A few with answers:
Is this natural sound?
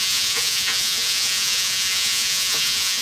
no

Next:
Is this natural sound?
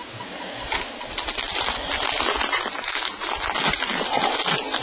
yes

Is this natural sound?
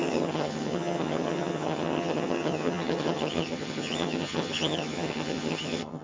no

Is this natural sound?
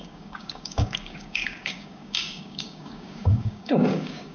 no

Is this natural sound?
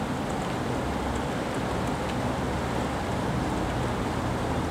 yes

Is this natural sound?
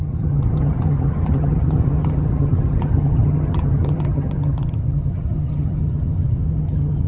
no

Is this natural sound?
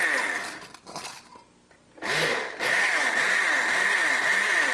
yes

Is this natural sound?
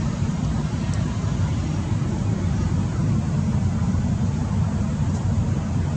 no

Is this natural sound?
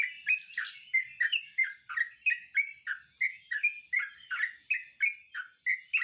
yes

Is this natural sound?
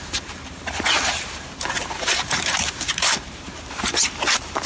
no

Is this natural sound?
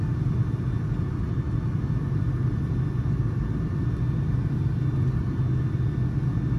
yes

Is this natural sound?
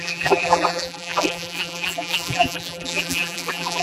no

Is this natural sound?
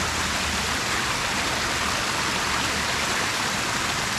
yes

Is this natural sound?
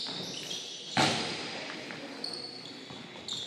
yes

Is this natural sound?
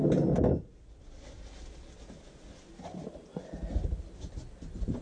yes